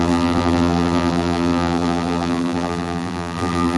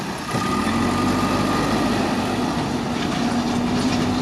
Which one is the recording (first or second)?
second